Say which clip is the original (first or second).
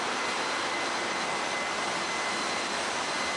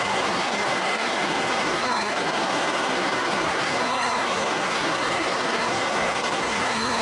first